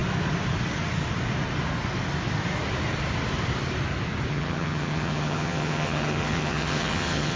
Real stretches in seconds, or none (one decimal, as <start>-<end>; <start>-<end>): 0.0-4.3